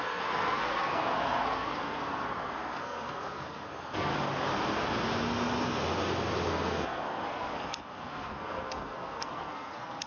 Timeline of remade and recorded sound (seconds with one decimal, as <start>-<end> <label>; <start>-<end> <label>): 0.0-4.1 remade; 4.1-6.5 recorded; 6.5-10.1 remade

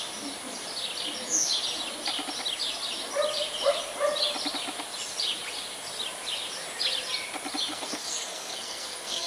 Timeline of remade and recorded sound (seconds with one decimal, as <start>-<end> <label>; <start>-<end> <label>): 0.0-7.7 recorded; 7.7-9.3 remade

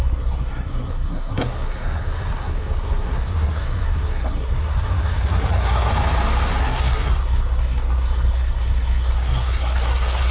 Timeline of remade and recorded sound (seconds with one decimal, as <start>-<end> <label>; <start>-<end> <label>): 0.0-5.9 remade; 5.9-6.6 recorded; 6.6-10.3 remade

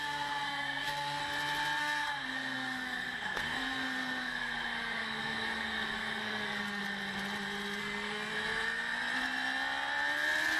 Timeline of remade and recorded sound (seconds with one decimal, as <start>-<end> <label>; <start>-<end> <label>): 0.0-1.2 remade; 1.2-1.8 recorded; 1.8-6.8 remade; 6.8-7.8 recorded; 7.8-8.3 remade; 8.3-10.6 recorded

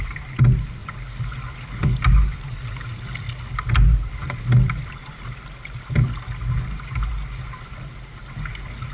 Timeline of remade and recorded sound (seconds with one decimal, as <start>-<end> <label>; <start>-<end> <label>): 0.0-8.9 recorded

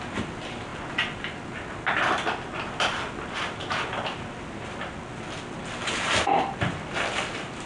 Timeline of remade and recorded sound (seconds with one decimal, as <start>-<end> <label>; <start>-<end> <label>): 0.0-7.7 recorded